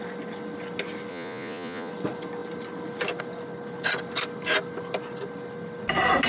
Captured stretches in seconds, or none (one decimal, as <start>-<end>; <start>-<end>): 0.0-1.1; 1.9-6.3